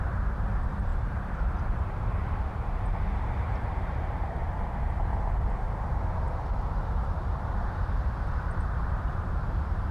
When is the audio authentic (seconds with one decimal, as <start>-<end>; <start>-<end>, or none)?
5.1-8.3